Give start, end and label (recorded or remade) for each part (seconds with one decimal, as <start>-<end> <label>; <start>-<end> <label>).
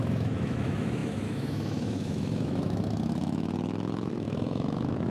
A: 0.0-5.1 remade